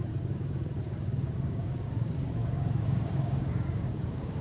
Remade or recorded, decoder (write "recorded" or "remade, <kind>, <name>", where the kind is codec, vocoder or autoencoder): remade, codec, DAC